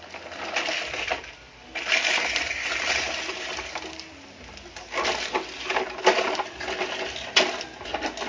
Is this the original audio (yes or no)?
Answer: yes